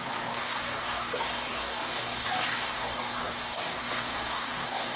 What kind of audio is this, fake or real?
fake